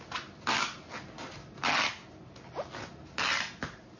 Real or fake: real